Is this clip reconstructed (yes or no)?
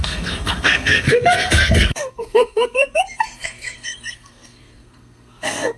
yes